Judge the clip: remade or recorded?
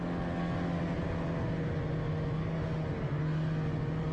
recorded